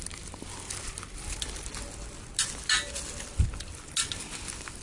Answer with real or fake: real